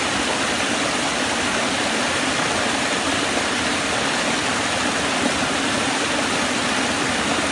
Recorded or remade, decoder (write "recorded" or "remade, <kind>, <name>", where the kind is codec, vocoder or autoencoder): recorded